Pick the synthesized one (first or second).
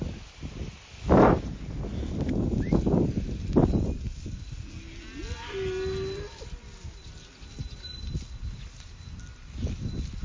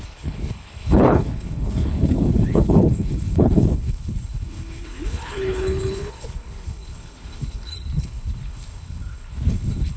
second